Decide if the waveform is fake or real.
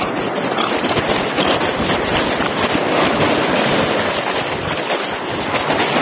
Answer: real